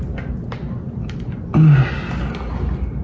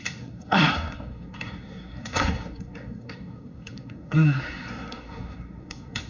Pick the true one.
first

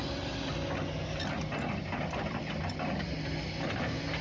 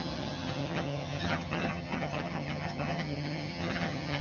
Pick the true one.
first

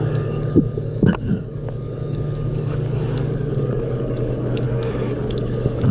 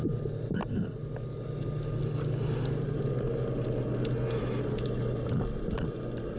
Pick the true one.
second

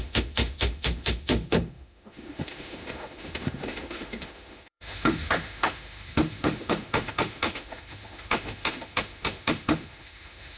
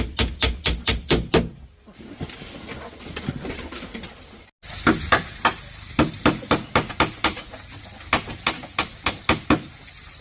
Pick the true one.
second